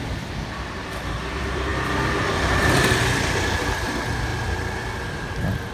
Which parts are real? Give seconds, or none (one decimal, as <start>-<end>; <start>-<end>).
1.7-2.3; 4.3-5.7